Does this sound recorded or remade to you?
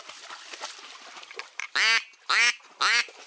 recorded